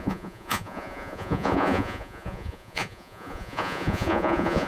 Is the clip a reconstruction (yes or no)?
yes